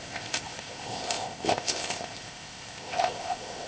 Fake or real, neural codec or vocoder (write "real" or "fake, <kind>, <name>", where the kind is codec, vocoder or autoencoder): fake, codec, ZipCodec